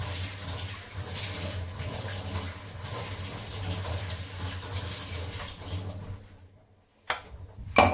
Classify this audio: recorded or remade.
recorded